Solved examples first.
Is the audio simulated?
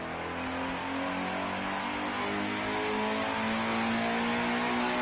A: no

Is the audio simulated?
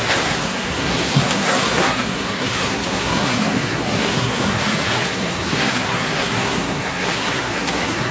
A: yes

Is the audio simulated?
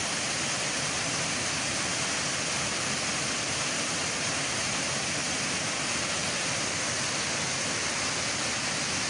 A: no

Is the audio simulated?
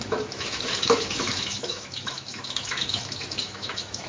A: yes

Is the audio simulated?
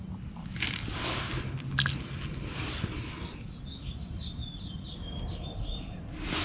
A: no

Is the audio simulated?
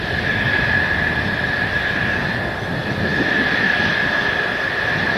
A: no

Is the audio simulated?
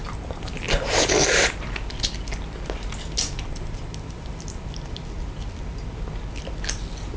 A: no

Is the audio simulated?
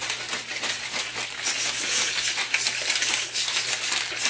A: no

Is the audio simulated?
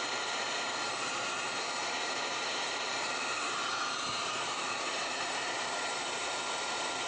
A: yes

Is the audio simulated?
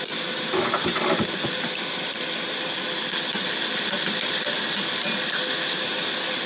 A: no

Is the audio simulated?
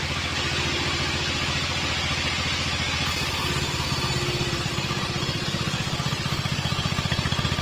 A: no